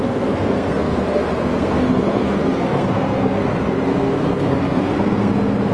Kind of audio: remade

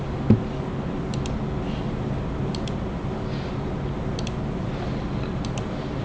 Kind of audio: recorded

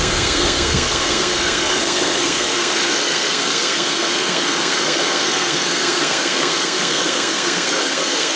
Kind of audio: remade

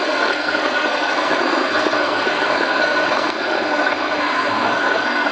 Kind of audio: remade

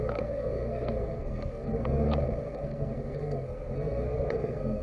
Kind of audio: remade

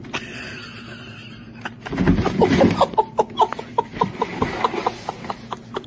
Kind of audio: recorded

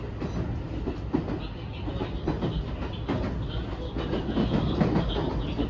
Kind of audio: recorded